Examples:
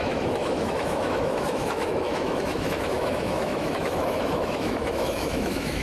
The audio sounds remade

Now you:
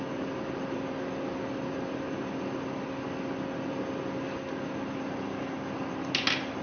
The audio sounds recorded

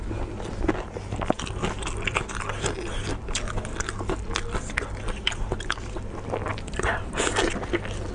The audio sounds recorded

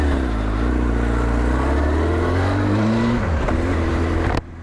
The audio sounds recorded